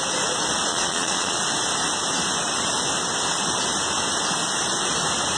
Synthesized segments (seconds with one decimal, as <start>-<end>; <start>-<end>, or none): 0.7-1.4